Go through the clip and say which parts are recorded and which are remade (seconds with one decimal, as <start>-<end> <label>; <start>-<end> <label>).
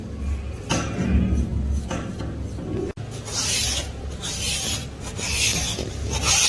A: 0.0-6.5 recorded